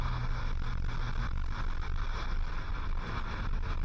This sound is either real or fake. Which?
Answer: real